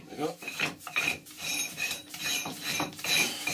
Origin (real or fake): fake